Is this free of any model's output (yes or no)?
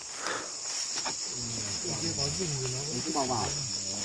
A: yes